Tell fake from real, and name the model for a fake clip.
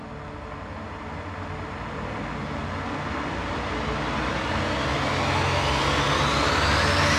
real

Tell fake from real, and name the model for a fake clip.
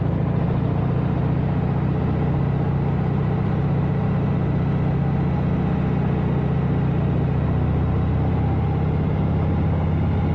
real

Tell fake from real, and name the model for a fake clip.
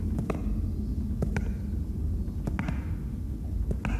real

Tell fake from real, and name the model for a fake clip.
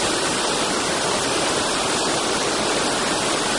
real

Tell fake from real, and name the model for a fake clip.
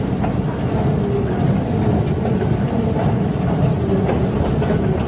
real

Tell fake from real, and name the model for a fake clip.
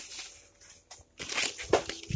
real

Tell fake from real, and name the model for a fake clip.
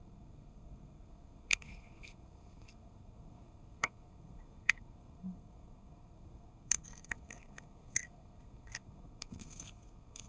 fake, codec, SNAC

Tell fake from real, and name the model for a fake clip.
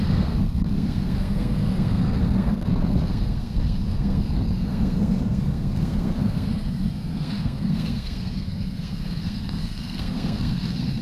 fake, codec, SNAC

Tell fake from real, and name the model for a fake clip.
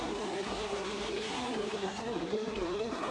fake, codec, SNAC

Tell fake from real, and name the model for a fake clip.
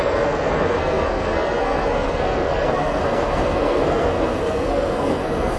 fake, codec, SNAC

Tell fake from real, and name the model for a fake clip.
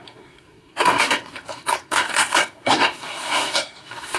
fake, codec, SNAC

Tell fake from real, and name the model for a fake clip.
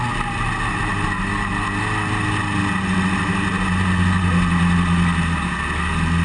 real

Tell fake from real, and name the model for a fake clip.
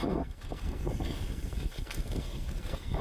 fake, codec, SNAC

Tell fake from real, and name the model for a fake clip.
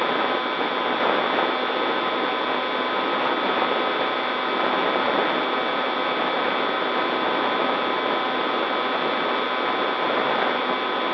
real